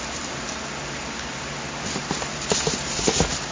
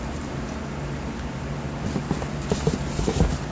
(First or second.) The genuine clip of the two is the first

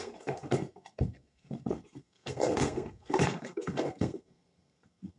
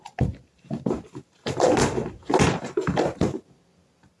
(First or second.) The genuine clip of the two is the second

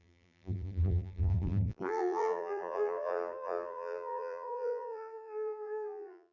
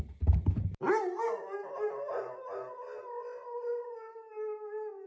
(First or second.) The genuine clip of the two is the second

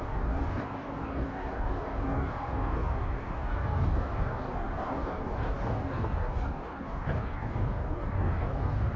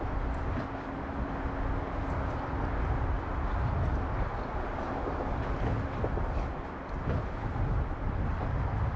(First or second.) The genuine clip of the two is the second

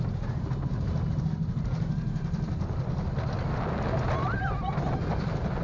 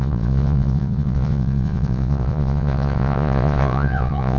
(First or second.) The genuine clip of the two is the first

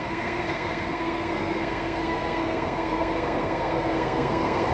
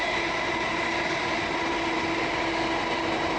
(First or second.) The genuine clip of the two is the second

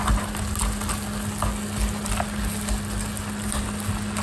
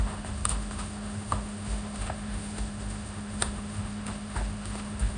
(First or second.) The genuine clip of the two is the first